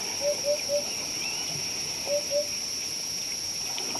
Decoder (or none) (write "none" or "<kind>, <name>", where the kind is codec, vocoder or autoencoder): none